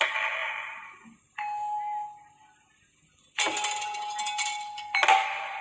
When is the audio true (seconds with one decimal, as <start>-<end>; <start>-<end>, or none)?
0.0-5.6